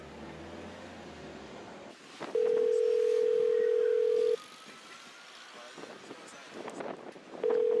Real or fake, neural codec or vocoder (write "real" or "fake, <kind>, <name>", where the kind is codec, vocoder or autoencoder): real